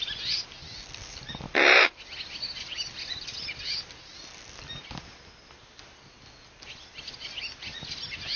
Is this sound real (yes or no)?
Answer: yes